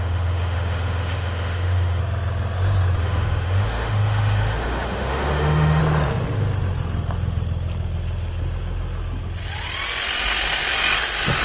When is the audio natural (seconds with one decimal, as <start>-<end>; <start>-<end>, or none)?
2.0-3.0; 5.8-11.4

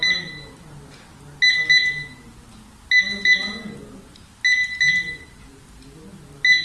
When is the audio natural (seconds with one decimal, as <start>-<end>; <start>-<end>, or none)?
0.0-6.6

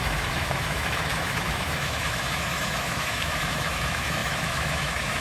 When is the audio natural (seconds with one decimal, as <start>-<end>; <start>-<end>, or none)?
none

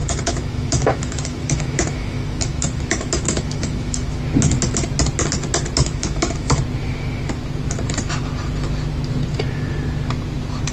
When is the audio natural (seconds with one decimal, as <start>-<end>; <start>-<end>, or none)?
4.2-5.8; 6.6-10.7

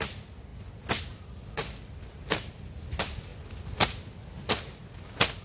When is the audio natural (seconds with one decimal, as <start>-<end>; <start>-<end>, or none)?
0.0-5.4